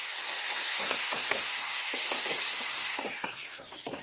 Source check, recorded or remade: remade